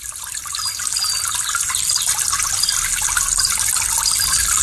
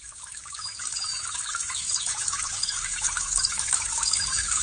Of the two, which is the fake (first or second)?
second